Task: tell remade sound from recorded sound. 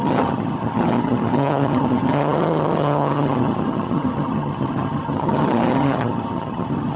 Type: remade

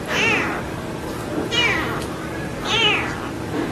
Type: recorded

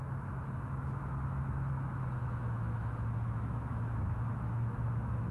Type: remade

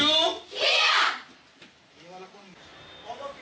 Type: recorded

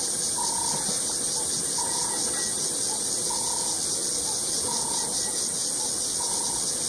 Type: recorded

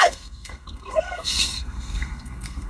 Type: remade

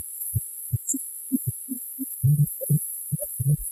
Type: remade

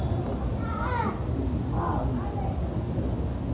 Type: recorded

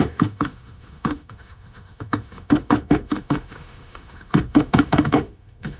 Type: remade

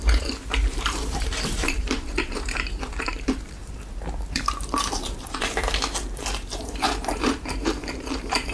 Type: remade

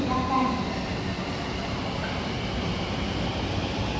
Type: recorded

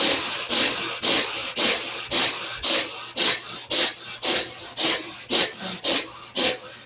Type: recorded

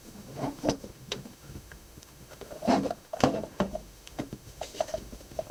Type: remade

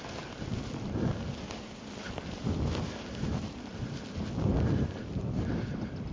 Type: recorded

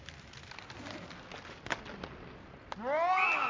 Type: recorded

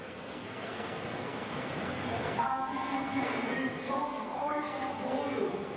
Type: remade